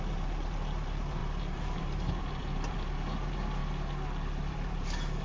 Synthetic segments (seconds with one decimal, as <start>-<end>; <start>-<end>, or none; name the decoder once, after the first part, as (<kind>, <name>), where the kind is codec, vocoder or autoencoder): 0.0-3.6 (vocoder, BigVGAN v2); 4.5-5.2